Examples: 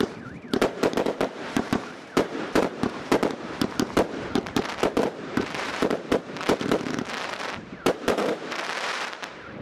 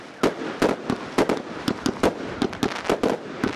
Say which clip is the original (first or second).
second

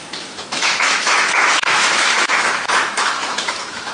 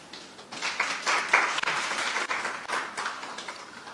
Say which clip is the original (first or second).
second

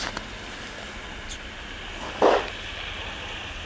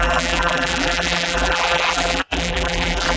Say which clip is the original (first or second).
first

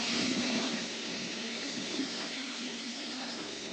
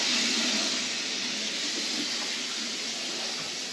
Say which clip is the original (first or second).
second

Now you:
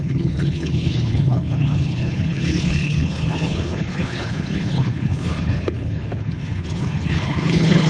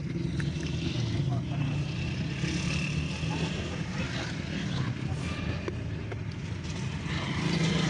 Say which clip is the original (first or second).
second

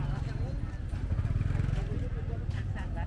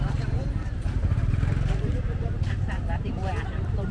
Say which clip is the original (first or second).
first